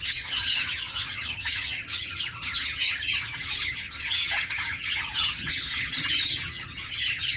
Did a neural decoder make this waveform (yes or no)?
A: yes